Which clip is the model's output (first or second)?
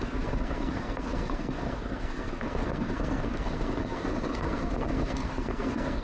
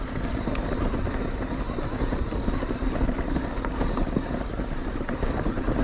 first